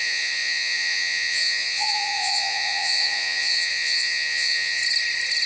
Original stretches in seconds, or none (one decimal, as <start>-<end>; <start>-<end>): 4.8-5.5